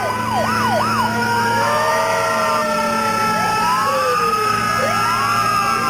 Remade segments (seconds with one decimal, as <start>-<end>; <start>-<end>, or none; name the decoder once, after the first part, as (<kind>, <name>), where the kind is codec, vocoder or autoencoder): 0.5-1.9 (autoencoder, DAC-VAE); 3.5-4.6